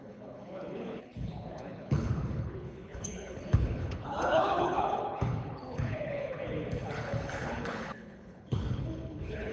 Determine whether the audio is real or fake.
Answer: fake